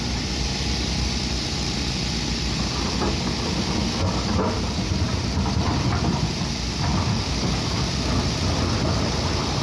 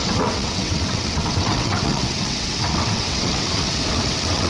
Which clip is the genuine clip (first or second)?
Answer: first